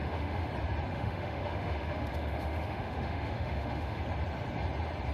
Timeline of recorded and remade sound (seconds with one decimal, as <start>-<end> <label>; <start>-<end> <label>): 0.0-0.5 remade; 0.5-0.9 recorded; 0.9-4.0 remade; 4.0-5.1 recorded